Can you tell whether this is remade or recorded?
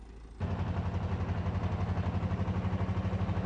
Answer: recorded